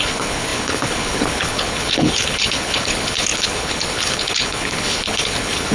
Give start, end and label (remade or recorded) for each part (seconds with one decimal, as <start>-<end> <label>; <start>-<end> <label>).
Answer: 0.0-5.7 remade